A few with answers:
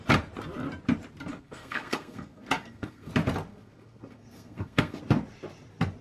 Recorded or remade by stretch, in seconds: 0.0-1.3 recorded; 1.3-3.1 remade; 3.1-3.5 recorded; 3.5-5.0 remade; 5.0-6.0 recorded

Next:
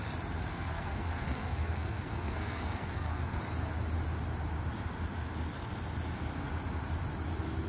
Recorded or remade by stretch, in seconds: 0.0-0.5 recorded; 0.5-3.4 remade; 3.4-7.7 recorded

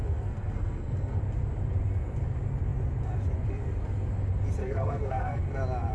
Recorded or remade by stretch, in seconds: 0.0-1.2 remade; 1.2-4.6 recorded; 4.6-5.4 remade; 5.4-5.9 recorded

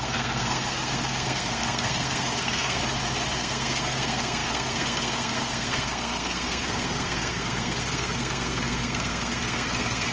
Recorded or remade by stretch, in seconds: 0.0-2.8 remade; 2.8-3.4 recorded; 3.4-10.1 remade

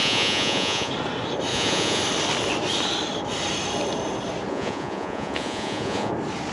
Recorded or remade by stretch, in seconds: 0.0-0.9 remade; 0.9-1.5 recorded; 1.5-2.0 remade; 2.0-4.5 recorded; 4.5-6.1 remade; 6.1-6.5 recorded

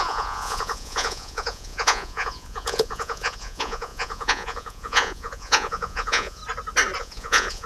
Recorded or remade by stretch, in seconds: 0.0-6.4 remade; 6.4-7.0 recorded; 7.0-7.7 remade

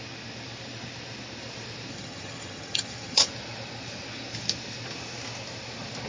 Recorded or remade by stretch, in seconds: 0.0-1.9 recorded; 1.9-3.3 remade; 3.3-6.1 recorded